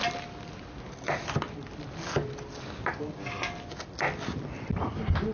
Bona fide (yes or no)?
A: yes